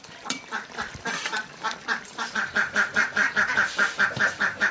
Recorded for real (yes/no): no